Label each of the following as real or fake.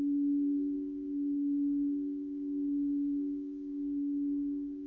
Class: fake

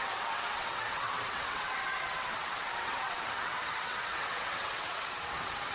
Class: fake